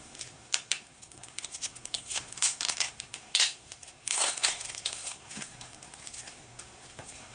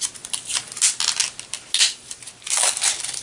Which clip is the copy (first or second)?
first